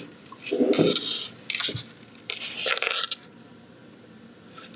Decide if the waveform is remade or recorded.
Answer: recorded